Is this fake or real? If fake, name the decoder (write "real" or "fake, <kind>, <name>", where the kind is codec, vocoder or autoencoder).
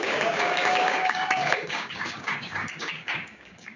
fake, codec, DAC